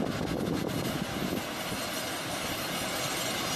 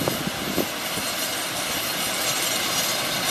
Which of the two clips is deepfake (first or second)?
second